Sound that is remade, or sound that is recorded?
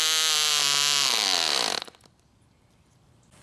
recorded